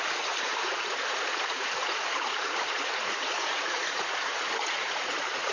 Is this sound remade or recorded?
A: remade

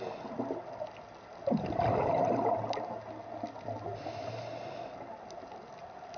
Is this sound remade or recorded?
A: recorded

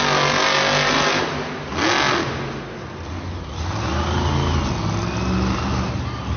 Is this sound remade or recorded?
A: recorded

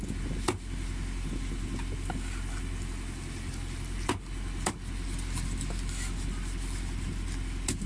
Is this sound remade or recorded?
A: recorded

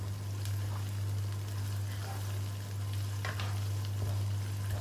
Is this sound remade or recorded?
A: recorded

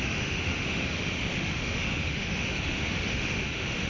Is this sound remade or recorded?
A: remade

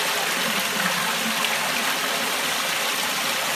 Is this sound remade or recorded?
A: recorded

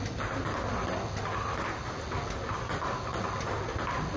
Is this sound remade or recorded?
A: recorded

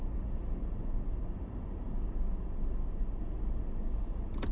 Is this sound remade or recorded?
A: recorded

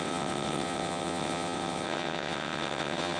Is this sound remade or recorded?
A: remade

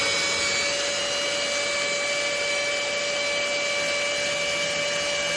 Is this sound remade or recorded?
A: recorded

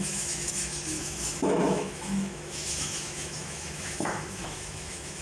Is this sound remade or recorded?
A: remade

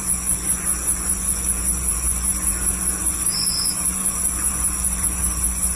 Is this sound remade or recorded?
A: remade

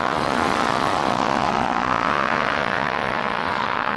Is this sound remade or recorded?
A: remade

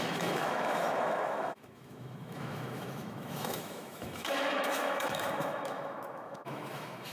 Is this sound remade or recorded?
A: remade